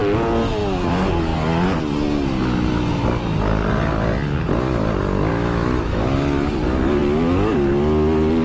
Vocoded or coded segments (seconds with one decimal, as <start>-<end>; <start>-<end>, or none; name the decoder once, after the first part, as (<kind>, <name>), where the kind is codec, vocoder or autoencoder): 5.3-6.0 (autoencoder, DAC-VAE)